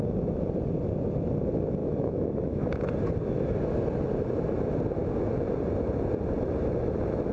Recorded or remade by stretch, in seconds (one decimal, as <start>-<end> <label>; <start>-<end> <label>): 0.0-1.8 recorded; 1.8-2.9 remade; 2.9-7.3 recorded

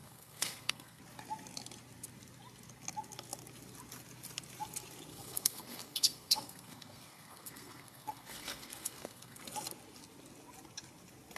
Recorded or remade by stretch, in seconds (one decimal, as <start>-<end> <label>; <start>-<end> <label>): 0.0-1.0 remade; 1.0-5.1 recorded; 5.1-9.4 remade; 9.4-11.4 recorded

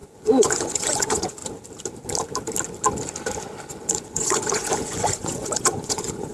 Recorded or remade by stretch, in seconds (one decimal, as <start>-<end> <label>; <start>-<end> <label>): 0.0-1.4 remade; 1.4-3.7 recorded; 3.7-6.3 remade

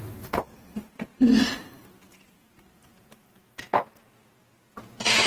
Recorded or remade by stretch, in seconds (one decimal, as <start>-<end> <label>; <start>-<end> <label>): 0.0-5.3 recorded

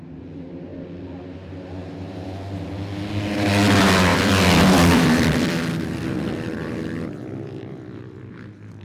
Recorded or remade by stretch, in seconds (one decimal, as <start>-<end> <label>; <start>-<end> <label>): 0.0-4.1 recorded; 4.1-7.6 remade; 7.6-8.8 recorded

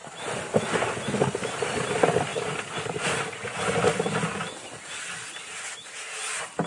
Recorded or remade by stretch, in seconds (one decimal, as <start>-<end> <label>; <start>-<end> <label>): 0.0-6.7 recorded

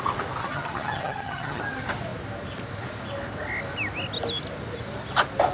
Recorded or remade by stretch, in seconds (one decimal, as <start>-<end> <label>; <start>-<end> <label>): 0.0-0.4 recorded; 0.4-1.6 remade; 1.6-5.5 recorded

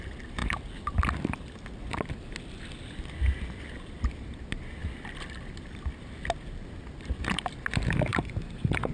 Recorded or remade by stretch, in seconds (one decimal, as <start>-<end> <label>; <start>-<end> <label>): 0.0-8.1 recorded; 8.1-8.9 remade